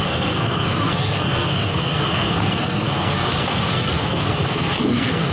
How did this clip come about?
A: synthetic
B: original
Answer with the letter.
A